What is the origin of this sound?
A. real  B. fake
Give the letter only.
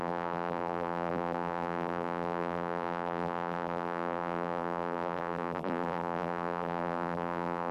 B